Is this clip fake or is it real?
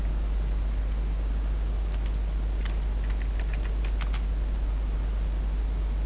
real